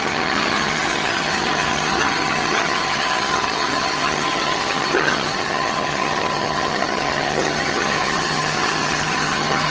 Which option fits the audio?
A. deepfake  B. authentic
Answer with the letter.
A